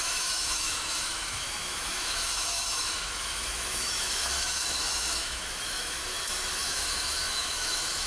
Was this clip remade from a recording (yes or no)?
yes